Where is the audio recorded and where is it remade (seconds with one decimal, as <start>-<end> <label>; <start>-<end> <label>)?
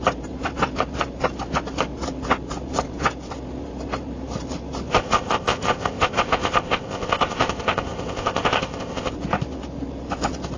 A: 0.0-4.9 recorded; 4.9-9.1 remade; 9.1-10.6 recorded